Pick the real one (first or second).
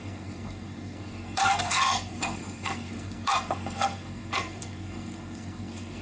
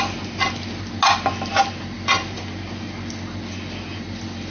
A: second